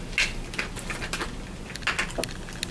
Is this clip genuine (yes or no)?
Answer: yes